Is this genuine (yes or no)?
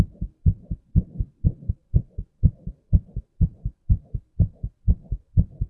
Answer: yes